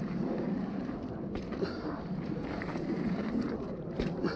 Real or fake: fake